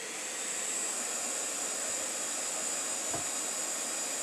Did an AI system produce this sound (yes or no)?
no